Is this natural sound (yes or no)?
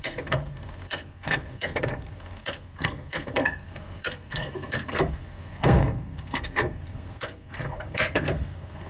no